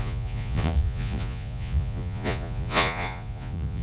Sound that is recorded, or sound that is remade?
remade